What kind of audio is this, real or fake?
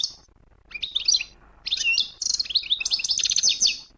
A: real